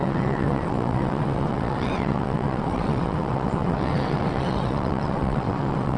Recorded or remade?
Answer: remade